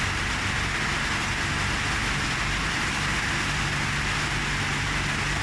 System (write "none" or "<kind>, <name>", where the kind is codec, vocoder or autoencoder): none